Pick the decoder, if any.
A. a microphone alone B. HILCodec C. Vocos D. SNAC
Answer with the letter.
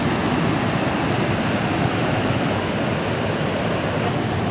A